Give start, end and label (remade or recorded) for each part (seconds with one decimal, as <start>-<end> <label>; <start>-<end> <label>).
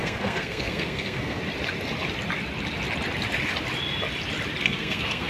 0.0-1.4 remade; 1.4-4.6 recorded; 4.6-5.3 remade